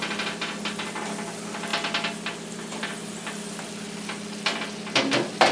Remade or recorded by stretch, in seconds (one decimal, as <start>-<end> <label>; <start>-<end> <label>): 0.0-5.5 recorded